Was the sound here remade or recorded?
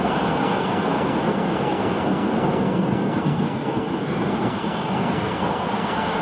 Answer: remade